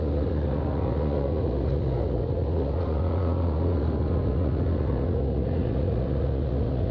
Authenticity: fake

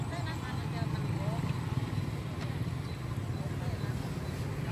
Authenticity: real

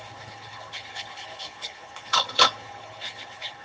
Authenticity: fake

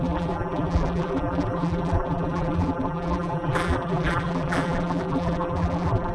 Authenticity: fake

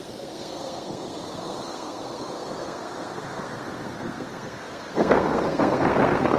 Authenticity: fake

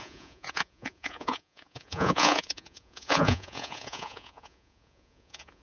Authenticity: fake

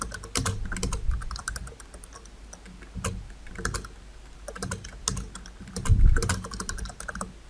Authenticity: real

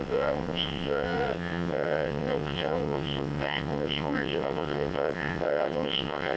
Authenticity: fake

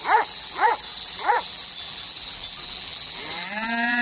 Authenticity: fake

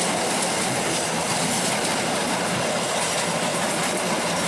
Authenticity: real